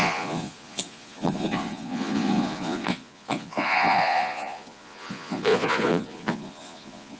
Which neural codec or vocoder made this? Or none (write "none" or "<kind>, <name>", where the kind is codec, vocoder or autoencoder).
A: vocoder, Vocos